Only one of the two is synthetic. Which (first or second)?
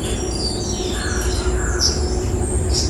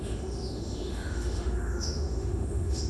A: second